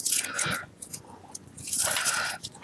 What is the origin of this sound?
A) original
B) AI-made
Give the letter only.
B